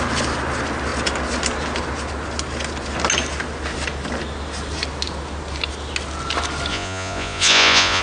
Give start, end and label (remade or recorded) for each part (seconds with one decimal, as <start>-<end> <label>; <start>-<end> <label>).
0.0-6.7 recorded; 6.7-8.0 remade